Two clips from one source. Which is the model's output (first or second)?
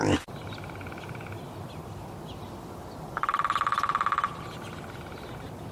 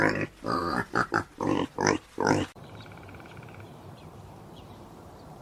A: second